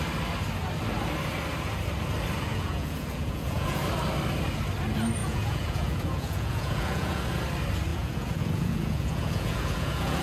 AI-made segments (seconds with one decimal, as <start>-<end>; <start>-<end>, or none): 2.5-3.8; 5.2-7.2; 7.9-10.2